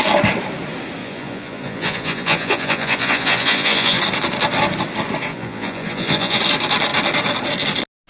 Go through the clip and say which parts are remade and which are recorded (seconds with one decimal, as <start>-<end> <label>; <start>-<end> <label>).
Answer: 0.0-1.0 recorded; 1.0-4.0 remade; 4.0-5.3 recorded; 5.3-6.4 remade; 6.4-8.1 recorded